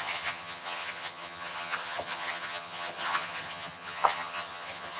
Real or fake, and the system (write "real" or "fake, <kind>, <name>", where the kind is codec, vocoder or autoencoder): fake, vocoder, HiFi-GAN